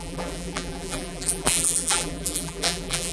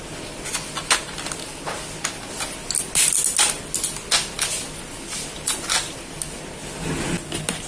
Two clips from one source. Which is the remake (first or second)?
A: first